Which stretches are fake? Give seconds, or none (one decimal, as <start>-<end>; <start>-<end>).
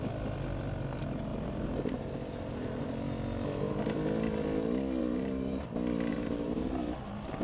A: 1.3-2.8; 5.0-5.6; 6.1-6.7